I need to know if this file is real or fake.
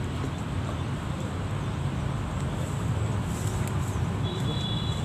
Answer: real